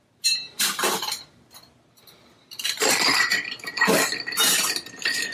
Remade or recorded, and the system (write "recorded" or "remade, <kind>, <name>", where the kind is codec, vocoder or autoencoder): recorded